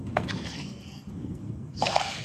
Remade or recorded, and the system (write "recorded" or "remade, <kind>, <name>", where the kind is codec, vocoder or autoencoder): remade, codec, SNAC